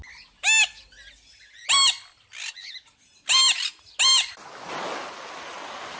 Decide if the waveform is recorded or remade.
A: recorded